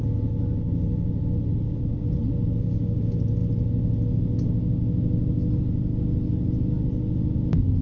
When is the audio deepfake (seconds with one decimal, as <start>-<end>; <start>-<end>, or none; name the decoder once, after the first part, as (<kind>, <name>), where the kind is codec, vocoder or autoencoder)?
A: none

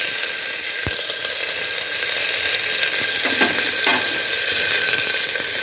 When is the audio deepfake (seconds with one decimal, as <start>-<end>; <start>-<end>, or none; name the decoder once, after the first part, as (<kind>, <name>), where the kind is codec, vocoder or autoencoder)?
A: none